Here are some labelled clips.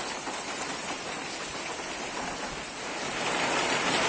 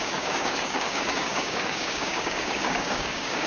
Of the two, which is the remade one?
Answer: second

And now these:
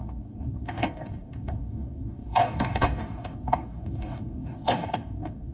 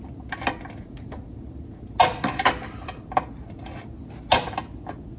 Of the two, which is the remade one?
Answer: first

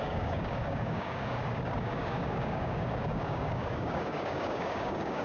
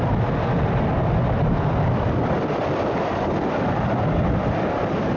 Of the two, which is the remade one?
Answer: first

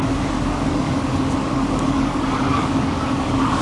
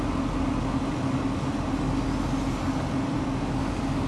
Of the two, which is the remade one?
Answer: first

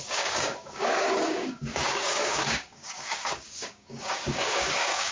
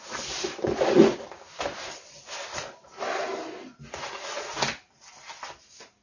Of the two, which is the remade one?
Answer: first